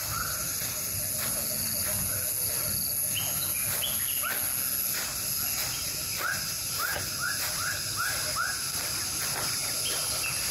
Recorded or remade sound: recorded